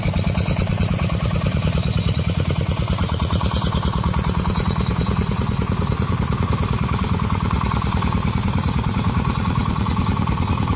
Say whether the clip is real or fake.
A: fake